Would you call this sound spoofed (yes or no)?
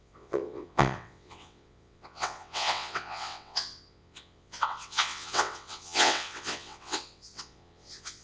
yes